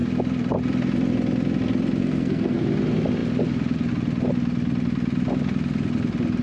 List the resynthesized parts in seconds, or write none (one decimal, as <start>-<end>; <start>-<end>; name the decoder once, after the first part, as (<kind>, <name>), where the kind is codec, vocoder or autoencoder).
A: 2.0-2.6 (codec, SNAC)